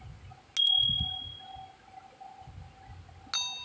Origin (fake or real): real